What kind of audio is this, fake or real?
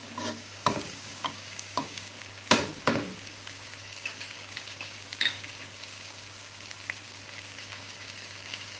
fake